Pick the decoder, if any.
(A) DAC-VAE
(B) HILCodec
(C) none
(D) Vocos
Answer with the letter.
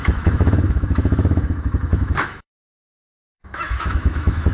A